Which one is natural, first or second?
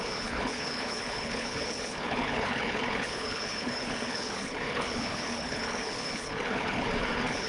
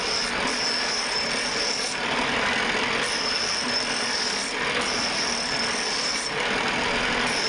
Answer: second